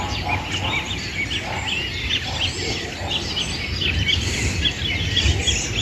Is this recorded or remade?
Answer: recorded